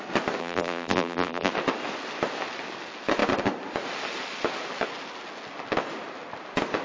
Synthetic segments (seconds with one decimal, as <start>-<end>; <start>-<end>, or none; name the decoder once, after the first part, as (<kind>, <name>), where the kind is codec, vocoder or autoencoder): 0.4-1.5 (vocoder, BigVGAN v2)